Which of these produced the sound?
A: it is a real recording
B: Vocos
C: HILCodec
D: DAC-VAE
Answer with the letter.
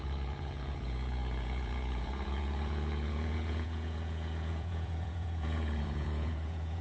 B